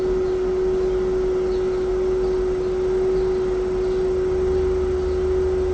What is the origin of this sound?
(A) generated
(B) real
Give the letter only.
B